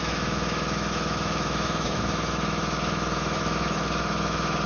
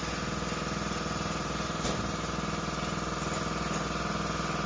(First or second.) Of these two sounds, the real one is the second